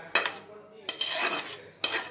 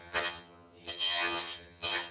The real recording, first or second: first